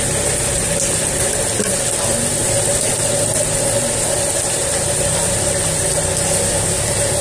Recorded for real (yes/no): yes